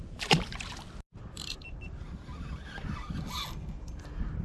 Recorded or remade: recorded